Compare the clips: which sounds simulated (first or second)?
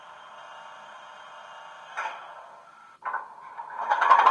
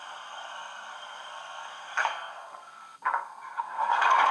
second